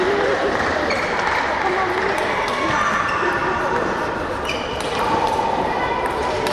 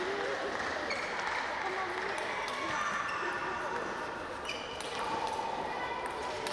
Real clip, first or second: second